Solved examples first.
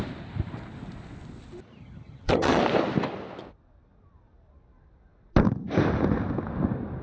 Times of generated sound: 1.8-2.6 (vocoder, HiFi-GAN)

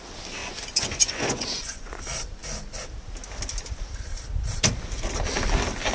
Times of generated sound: 0.4-2.0 (vocoder, Vocos)